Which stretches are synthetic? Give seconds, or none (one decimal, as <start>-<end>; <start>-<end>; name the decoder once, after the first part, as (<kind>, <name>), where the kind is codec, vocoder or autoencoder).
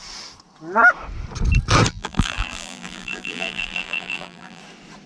1.9-4.6 (vocoder, BigVGAN v2)